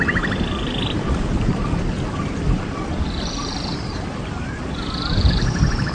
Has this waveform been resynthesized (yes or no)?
yes